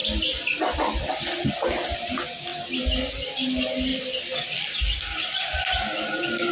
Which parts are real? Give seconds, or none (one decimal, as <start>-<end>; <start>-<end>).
0.0-6.5